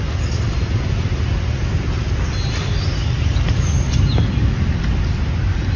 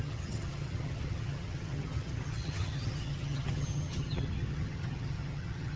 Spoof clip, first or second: second